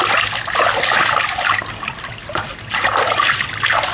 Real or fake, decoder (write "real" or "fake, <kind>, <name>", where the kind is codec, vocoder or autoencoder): real